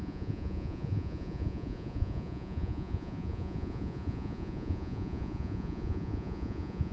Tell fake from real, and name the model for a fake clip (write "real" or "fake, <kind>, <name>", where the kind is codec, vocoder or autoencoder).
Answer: fake, vocoder, Vocos